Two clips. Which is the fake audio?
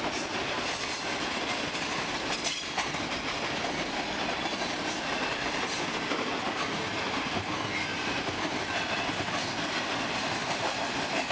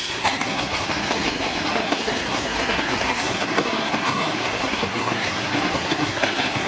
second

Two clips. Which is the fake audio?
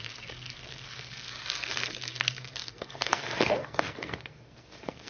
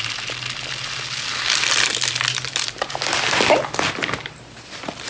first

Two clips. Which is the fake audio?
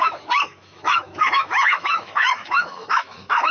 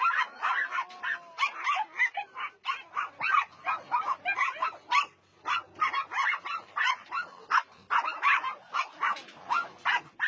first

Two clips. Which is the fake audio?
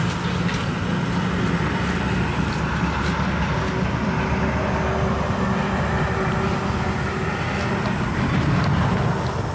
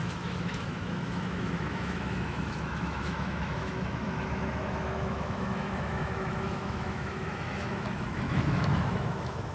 second